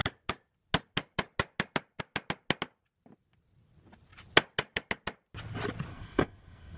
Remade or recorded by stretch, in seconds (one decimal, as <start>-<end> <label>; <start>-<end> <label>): 0.0-5.9 recorded; 5.9-6.8 remade